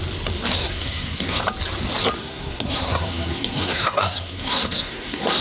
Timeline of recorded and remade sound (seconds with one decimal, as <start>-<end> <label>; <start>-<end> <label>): 0.0-0.6 recorded; 0.6-1.4 remade; 1.4-2.2 recorded; 2.2-5.4 remade